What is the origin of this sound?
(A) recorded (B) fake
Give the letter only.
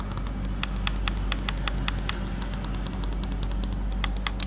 A